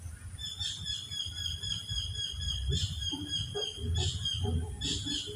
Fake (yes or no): no